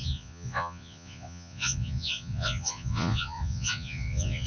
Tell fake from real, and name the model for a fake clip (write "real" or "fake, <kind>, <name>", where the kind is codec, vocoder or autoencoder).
fake, vocoder, Vocos